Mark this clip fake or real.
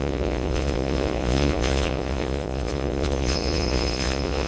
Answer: fake